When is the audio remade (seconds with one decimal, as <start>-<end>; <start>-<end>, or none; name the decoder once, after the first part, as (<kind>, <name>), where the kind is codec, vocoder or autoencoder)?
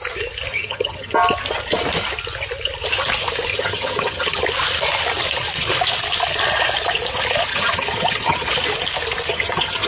0.5-1.1 (vocoder, HiFi-GAN); 3.5-4.4; 7.5-8.5; 9.3-9.9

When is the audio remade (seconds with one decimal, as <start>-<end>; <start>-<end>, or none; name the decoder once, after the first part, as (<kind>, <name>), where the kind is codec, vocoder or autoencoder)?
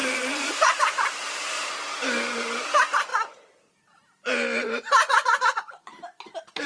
0.0-1.1 (vocoder, Vocos); 5.0-6.3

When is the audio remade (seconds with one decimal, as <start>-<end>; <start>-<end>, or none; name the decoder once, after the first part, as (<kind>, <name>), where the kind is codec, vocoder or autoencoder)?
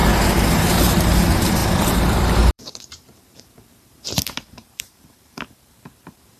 0.6-1.6 (vocoder, BigVGAN v2); 2.5-6.4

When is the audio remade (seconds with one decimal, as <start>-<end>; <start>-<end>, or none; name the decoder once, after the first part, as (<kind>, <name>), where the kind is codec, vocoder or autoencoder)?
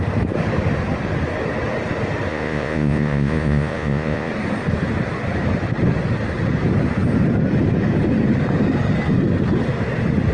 2.3-4.3 (vocoder, Vocos)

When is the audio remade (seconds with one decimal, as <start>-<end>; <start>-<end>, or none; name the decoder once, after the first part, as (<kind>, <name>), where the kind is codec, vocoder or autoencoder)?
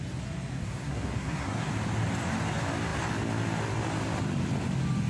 0.5-1.7 (codec, SNAC)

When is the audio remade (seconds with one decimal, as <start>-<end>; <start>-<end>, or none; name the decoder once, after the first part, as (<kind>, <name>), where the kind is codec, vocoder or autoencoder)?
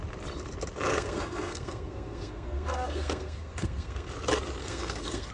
0.9-4.1 (codec, SNAC); 4.6-5.3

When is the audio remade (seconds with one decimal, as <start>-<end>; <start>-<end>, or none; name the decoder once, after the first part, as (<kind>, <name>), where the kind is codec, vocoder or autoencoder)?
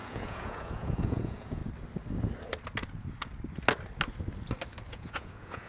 0.0-1.6 (vocoder, Vocos); 4.9-5.7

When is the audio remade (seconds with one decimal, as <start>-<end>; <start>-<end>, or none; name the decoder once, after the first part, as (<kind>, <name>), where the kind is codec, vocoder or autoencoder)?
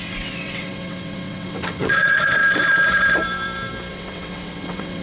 0.0-2.4 (vocoder, WaveNeXt); 3.9-5.0